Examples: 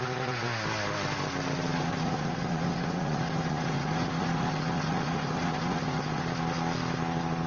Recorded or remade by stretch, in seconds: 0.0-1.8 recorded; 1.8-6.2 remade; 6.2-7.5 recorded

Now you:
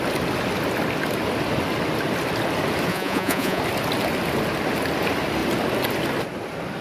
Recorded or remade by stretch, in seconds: 0.0-2.9 recorded; 2.9-3.6 remade; 3.6-6.8 recorded